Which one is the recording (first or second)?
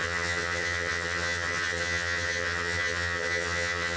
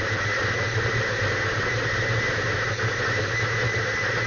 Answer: second